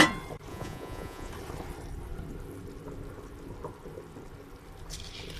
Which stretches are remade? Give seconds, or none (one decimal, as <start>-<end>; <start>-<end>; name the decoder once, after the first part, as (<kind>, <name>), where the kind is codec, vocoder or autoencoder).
0.5-1.3 (vocoder, Vocos)